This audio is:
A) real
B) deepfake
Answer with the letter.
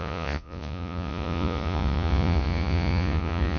B